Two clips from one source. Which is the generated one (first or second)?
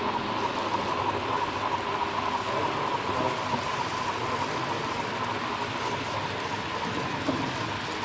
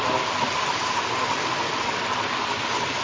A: second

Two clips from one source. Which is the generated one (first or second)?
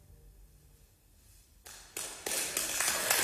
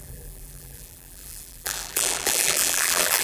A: second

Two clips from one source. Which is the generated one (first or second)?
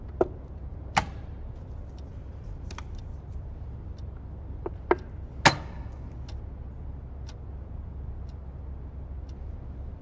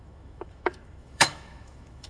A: second